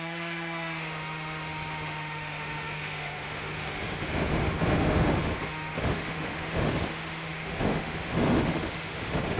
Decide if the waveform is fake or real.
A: fake